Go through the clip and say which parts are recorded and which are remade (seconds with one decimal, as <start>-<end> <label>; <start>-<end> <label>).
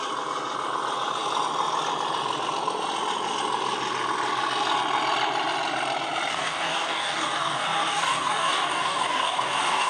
0.0-6.3 recorded; 6.3-9.9 remade